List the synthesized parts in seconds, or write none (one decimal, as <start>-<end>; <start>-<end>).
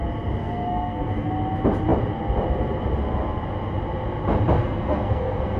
0.4-1.3; 4.6-5.6